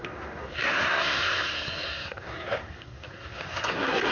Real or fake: fake